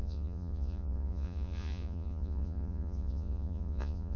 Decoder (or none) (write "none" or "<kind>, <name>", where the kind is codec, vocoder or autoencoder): vocoder, Vocos